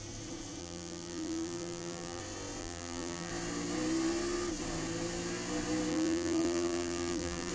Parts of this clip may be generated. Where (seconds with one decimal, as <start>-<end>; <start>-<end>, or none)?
0.6-2.2; 2.6-3.3; 5.9-7.5